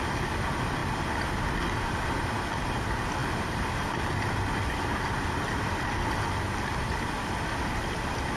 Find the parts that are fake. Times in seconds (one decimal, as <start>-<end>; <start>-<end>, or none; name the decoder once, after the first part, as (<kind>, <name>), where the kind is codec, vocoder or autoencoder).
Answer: none